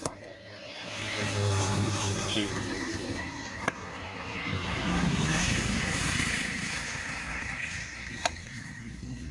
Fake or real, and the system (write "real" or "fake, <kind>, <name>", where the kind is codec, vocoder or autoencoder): fake, codec, SNAC